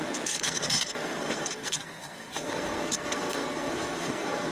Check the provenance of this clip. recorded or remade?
remade